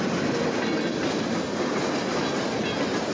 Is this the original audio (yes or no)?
yes